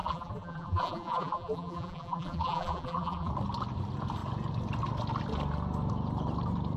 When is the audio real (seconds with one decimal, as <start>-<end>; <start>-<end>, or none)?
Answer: 3.3-6.8